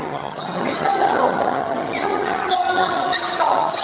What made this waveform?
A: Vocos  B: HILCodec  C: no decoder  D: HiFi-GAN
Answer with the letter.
D